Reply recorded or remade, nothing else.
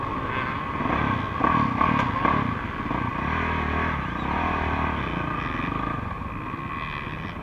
recorded